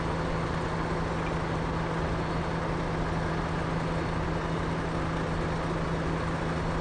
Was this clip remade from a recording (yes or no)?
no